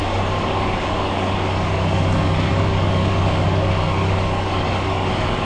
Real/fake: fake